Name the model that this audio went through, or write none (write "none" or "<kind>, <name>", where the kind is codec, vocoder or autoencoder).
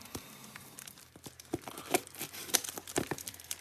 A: vocoder, BigVGAN v2